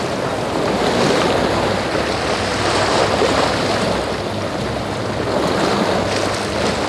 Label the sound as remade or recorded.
recorded